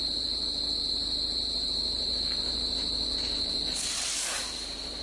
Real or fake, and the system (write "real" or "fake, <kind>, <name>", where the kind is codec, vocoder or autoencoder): fake, vocoder, BigVGAN v2